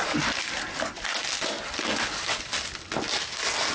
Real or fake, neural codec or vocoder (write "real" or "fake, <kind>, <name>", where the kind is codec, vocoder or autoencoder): real